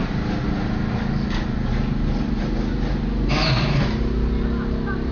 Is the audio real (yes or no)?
yes